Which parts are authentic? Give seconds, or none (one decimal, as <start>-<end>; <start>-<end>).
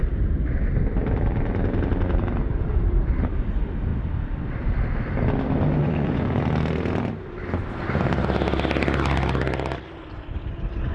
0.0-5.8; 6.4-10.9